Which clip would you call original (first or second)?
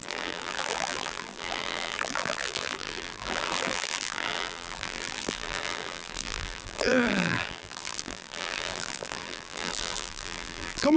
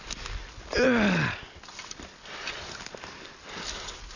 second